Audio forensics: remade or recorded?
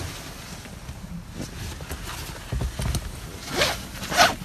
recorded